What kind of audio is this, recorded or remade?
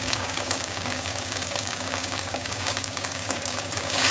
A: remade